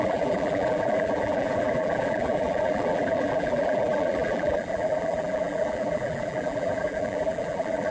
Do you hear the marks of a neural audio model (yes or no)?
yes